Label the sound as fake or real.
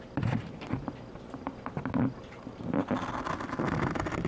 real